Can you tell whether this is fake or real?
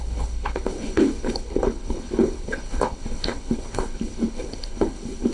fake